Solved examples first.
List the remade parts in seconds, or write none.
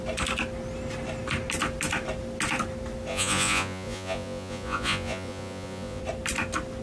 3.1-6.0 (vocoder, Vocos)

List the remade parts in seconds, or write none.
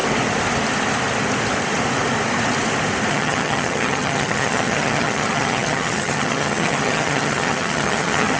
3.1-8.4 (vocoder, HiFi-GAN)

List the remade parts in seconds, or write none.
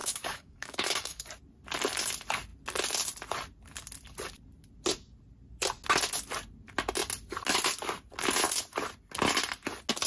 0.0-1.3 (codec, DAC)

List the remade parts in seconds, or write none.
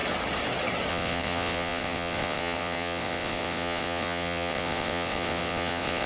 0.9-6.1 (vocoder, WaveNeXt)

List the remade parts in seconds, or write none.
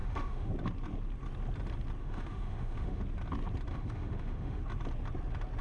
0.0-0.5 (autoencoder, DAC-VAE); 2.0-3.0; 3.7-4.6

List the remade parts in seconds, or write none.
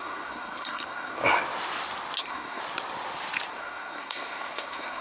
0.0-1.2 (codec, SNAC); 2.2-2.6; 3.5-5.0